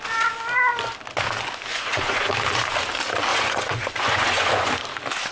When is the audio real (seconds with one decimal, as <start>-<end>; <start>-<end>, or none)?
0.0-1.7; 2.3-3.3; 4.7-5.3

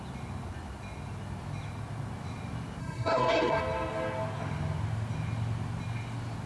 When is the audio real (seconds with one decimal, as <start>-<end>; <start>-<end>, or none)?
0.0-2.8; 3.6-6.5

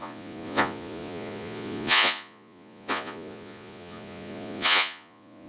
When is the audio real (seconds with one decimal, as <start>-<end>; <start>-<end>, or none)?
none

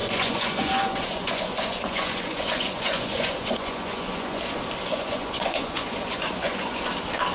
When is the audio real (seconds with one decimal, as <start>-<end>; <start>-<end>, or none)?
4.4-4.9; 6.8-7.3

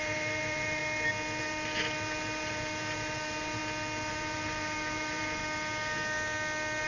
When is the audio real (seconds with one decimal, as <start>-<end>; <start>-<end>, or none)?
0.8-1.4; 3.6-4.1; 5.4-6.9